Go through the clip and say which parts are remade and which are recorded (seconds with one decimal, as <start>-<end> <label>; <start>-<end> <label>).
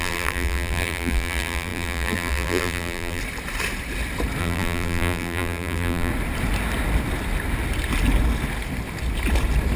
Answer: 0.0-3.2 remade; 3.2-4.4 recorded; 4.4-6.1 remade; 6.1-9.8 recorded